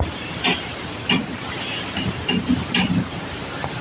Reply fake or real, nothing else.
fake